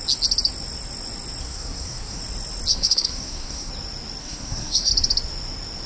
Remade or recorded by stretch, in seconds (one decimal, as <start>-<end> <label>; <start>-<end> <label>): 0.0-1.4 recorded; 1.4-2.2 remade; 2.2-2.7 recorded; 2.7-3.7 remade; 3.7-4.2 recorded; 4.2-4.9 remade; 4.9-5.9 recorded